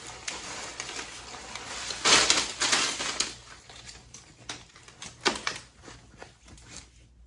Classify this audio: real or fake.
real